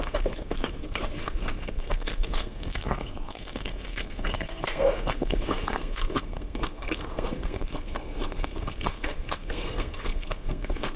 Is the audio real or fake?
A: fake